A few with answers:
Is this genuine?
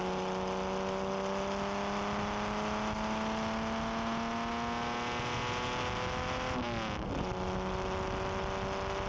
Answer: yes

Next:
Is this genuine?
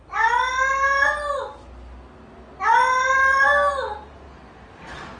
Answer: yes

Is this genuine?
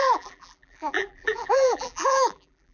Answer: no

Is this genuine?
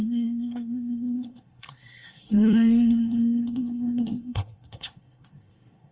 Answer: no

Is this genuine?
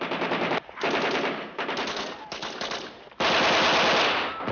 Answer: yes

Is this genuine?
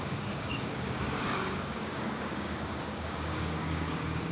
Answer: no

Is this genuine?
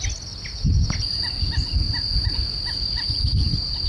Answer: yes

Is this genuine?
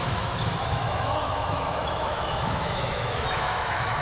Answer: no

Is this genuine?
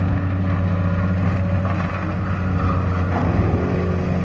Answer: yes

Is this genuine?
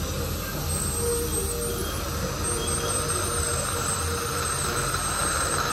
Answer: yes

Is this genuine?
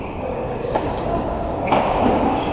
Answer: no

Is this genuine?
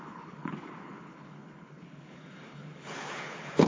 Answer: no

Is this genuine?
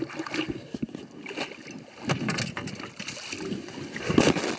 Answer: yes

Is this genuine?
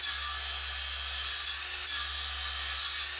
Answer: yes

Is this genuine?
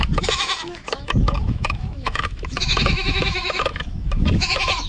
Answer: no